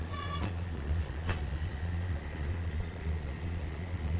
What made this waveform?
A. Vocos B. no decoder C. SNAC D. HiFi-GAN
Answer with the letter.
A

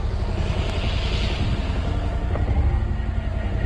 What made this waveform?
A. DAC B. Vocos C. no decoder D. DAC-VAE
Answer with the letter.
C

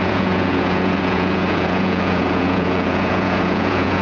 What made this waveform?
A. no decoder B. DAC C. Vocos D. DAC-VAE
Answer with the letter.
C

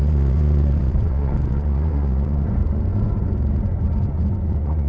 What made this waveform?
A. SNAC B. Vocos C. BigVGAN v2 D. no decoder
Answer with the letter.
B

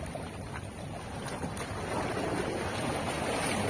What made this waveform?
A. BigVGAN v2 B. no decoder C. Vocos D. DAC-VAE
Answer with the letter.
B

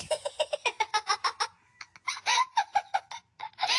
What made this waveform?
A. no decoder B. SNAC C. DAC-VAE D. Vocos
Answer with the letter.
A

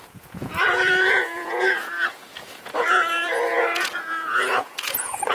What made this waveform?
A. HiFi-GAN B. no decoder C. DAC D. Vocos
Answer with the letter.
D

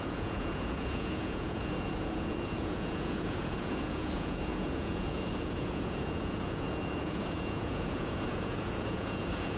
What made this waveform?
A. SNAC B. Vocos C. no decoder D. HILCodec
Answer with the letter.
B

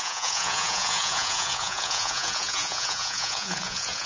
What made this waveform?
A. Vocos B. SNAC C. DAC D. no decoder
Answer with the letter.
A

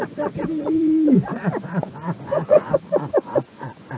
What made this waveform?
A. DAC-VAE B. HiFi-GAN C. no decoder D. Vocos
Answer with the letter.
D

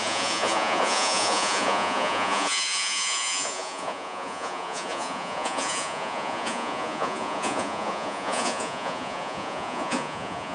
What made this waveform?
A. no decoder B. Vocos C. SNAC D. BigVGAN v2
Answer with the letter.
B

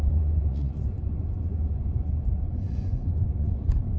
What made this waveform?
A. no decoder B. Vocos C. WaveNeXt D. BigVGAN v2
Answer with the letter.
B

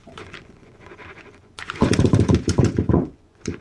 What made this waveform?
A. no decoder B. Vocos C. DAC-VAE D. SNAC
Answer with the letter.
B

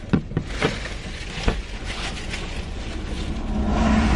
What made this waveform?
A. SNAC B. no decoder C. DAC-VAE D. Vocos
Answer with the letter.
D